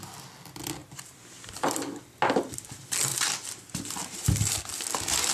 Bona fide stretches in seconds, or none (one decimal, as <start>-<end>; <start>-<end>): 0.0-0.8; 1.5-5.3